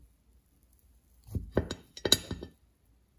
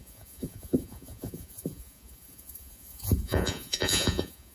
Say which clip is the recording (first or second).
first